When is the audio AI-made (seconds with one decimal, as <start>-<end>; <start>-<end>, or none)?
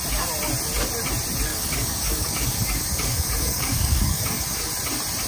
1.5-4.7